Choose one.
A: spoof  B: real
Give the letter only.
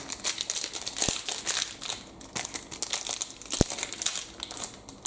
B